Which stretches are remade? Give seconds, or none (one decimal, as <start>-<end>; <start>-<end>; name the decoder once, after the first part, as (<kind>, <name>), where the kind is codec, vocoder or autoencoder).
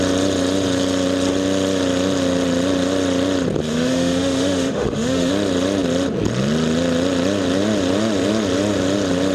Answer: 3.7-5.3 (autoencoder, DAC-VAE)